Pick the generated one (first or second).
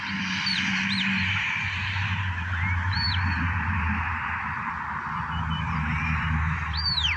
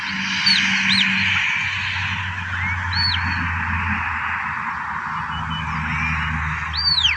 first